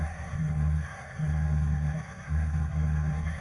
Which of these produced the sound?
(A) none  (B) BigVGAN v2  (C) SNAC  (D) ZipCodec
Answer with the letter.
C